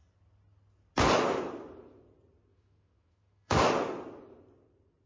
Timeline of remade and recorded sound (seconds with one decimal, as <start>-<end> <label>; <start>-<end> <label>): 0.0-2.5 recorded; 2.5-3.6 remade; 3.6-5.1 recorded